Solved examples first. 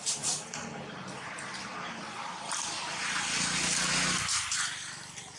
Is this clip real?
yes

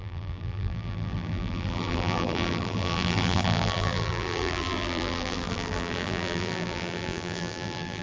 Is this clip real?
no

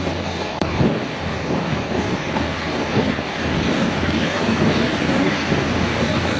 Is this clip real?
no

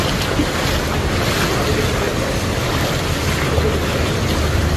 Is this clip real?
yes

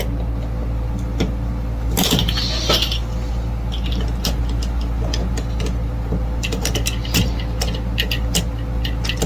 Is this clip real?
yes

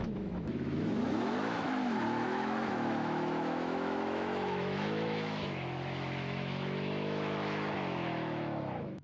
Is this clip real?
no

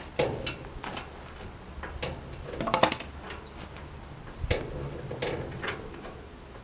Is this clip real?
yes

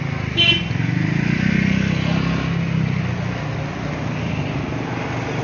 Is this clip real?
yes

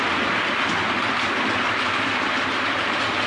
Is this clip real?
yes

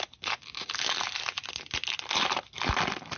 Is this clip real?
yes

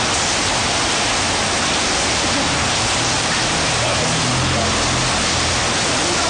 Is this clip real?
yes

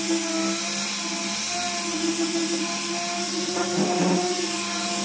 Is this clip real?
yes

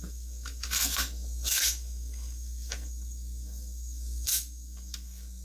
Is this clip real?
no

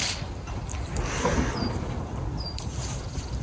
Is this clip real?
no